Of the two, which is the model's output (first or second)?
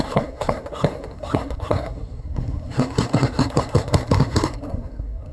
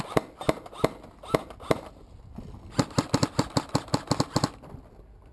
first